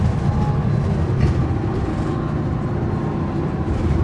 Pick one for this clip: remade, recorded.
recorded